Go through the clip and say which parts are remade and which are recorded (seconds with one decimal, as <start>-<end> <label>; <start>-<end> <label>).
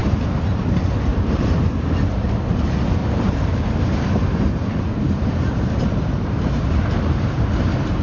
0.0-1.1 recorded; 1.1-1.9 remade; 1.9-3.0 recorded; 3.0-7.4 remade; 7.4-8.0 recorded